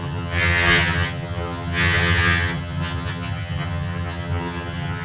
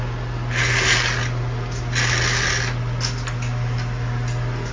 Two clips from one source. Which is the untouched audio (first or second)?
second